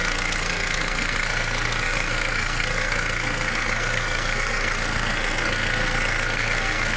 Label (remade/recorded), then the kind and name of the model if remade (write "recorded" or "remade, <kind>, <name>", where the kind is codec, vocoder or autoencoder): remade, codec, SNAC